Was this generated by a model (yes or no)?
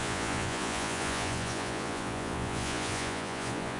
yes